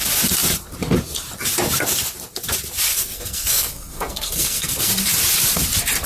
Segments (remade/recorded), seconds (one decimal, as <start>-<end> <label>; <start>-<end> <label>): 0.0-2.9 recorded; 2.9-4.9 remade; 4.9-6.1 recorded